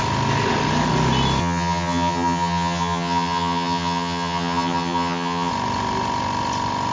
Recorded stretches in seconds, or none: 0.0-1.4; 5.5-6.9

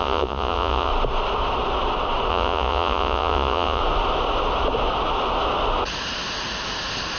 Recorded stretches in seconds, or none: 0.9-2.3; 3.8-7.2

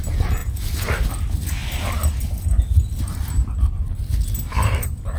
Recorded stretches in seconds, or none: 0.0-5.2

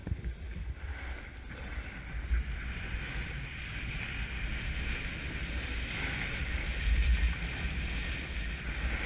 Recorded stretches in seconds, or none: 0.0-9.1

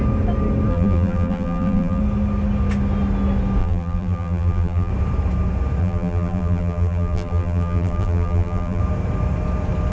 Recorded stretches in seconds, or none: 0.0-0.7; 2.0-3.6; 4.9-5.8; 8.8-9.9

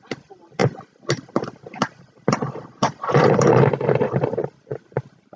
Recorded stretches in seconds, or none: 0.0-5.4